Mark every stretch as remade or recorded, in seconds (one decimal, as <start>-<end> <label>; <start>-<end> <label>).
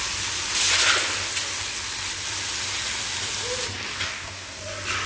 0.0-3.9 recorded; 3.9-4.6 remade; 4.6-5.1 recorded